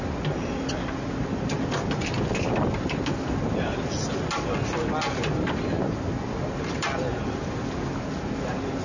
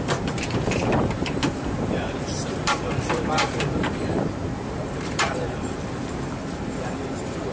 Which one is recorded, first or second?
first